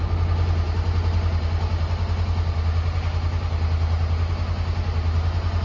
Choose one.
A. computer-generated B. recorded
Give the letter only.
B